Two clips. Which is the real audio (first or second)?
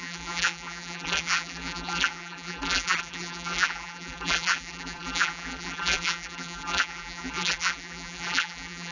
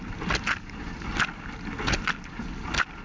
second